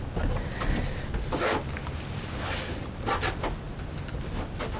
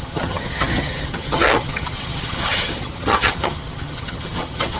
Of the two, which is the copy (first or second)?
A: second